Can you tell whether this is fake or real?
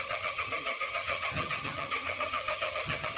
fake